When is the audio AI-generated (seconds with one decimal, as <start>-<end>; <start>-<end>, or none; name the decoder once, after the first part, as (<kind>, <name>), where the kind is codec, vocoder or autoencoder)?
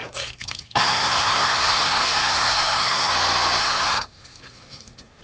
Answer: 0.0-3.1 (codec, SNAC); 3.6-5.2